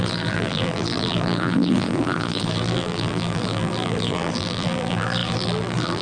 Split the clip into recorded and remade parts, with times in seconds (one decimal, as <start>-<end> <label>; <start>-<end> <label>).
0.0-6.0 remade